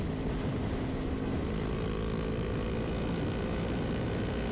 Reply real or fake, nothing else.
real